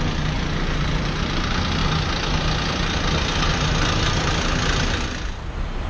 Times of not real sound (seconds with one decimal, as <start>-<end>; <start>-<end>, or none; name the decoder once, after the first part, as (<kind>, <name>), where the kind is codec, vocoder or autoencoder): none